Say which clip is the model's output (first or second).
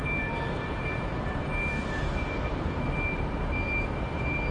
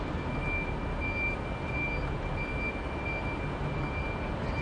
first